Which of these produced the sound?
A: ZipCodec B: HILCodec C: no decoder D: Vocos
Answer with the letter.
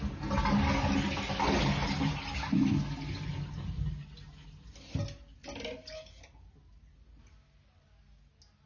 C